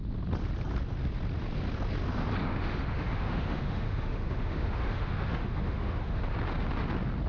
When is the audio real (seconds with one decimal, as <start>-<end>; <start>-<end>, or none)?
0.0-2.4; 6.2-7.3